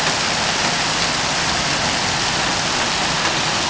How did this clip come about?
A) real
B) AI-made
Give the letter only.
A